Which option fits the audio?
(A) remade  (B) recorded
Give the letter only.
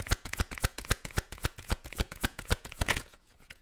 A